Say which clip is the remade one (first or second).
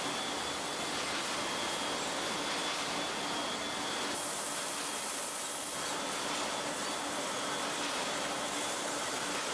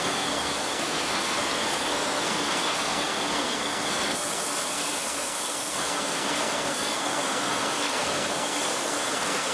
second